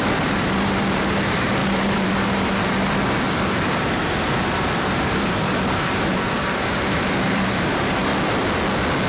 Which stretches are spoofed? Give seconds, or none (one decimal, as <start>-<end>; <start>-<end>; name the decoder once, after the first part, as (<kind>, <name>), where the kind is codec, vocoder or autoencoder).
0.0-8.1 (vocoder, BigVGAN v2)